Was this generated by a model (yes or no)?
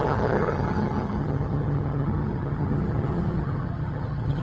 yes